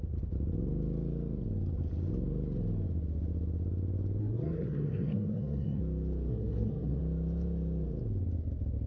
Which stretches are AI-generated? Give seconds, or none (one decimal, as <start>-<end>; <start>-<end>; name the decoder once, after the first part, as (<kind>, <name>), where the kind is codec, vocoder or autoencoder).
4.2-5.8 (codec, SNAC); 6.3-7.0